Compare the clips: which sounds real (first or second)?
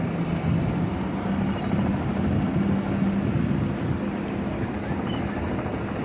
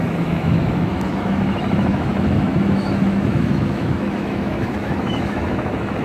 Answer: first